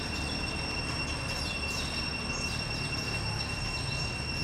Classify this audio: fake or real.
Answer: real